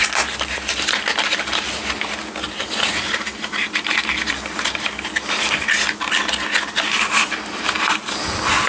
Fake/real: real